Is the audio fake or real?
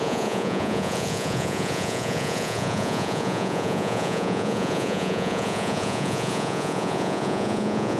fake